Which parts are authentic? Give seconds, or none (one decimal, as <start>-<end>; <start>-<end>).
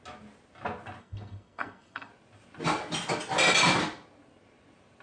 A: 0.0-1.0; 2.1-5.0